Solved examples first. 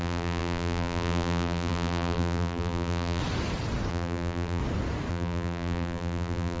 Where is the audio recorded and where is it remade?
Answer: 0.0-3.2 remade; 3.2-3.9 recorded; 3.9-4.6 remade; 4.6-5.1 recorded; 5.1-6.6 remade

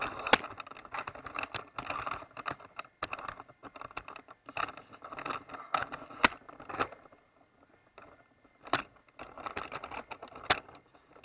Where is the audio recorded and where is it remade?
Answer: 0.0-11.2 recorded

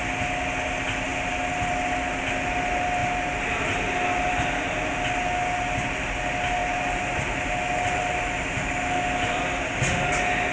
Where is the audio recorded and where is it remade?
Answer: 0.0-6.6 recorded; 6.6-9.4 remade; 9.4-10.5 recorded

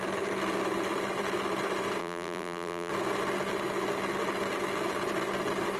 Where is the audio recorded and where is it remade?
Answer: 0.0-2.0 recorded; 2.0-2.9 remade; 2.9-5.8 recorded